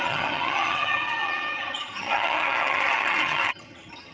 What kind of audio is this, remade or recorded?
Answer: remade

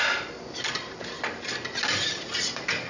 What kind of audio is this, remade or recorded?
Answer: recorded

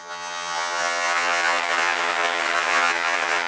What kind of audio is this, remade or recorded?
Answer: remade